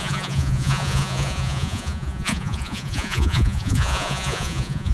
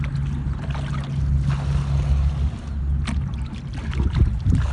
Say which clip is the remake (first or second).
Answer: first